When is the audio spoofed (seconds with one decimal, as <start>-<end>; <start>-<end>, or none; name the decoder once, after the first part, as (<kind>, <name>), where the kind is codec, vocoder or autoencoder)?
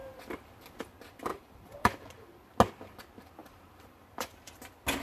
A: 1.3-2.4 (vocoder, BigVGAN v2); 3.4-4.4